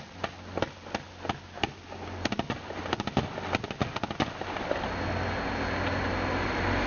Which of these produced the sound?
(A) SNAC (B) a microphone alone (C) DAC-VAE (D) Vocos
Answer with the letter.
B